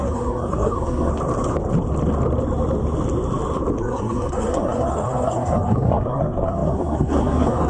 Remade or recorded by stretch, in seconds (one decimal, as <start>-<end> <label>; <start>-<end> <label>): 0.0-1.1 remade; 1.1-3.8 recorded; 3.8-7.7 remade